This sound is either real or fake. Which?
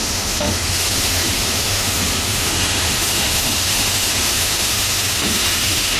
fake